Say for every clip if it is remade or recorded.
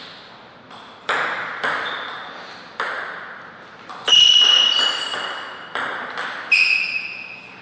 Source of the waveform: recorded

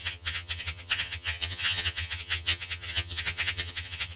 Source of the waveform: remade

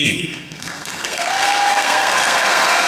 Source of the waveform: remade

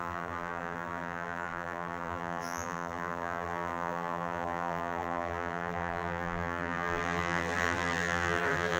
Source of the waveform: remade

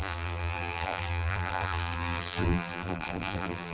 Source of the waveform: remade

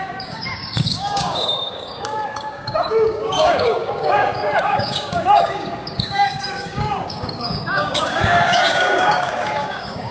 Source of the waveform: remade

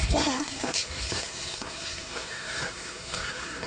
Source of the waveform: remade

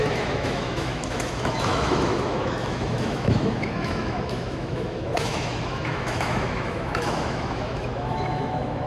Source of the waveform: remade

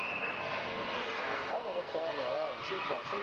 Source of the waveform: remade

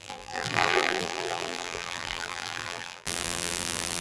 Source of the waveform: remade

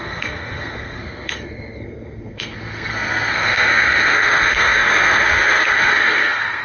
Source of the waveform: remade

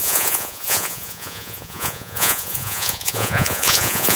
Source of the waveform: remade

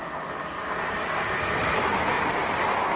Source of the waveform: recorded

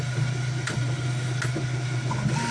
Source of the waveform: recorded